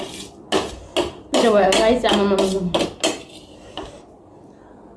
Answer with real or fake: real